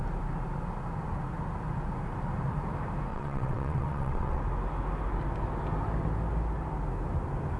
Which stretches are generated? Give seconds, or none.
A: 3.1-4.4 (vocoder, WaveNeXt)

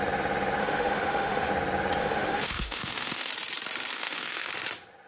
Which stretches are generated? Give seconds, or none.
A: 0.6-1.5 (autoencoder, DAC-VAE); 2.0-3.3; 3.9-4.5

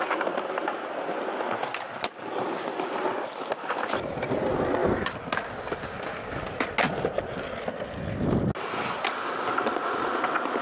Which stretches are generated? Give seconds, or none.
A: none

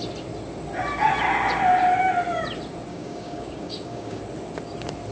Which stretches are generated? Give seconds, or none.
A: 2.9-4.2 (codec, DAC)